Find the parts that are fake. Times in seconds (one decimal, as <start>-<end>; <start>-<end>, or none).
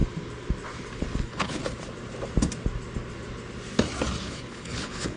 1.2-1.6; 4.2-5.2